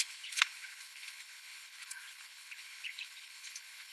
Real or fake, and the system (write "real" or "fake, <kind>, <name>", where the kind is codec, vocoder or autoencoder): fake, codec, HILCodec